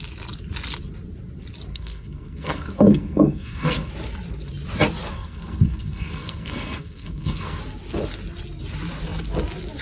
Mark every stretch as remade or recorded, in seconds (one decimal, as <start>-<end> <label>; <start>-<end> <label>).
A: 0.0-1.7 recorded; 1.7-3.9 remade; 3.9-5.1 recorded; 5.1-7.6 remade; 7.6-9.8 recorded